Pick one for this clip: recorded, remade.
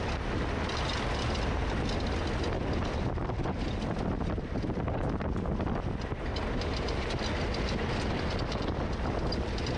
recorded